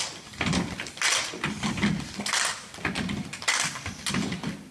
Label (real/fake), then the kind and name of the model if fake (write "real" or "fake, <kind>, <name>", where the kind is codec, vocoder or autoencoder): real